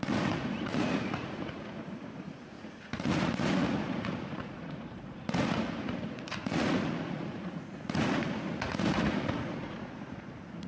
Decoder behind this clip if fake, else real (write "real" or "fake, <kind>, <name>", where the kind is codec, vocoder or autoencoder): fake, vocoder, Vocos